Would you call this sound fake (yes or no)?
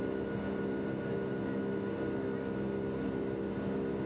no